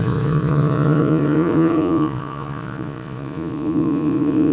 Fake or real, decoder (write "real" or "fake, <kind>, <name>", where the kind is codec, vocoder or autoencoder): fake, vocoder, Vocos